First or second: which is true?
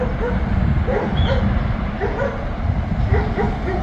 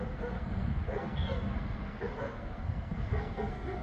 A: first